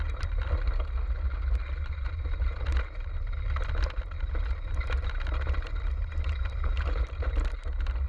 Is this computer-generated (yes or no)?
no